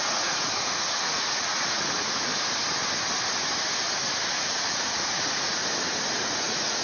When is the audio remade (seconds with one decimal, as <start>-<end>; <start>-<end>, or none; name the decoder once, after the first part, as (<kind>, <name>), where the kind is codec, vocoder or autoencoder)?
0.0-2.3 (vocoder, Vocos); 4.3-5.6; 6.2-6.8